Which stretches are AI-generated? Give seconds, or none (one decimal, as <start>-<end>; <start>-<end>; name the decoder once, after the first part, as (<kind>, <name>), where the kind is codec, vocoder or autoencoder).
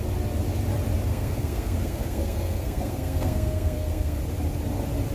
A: 1.1-4.2 (codec, SNAC)